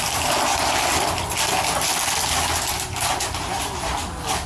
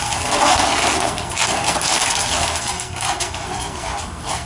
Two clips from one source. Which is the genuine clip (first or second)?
first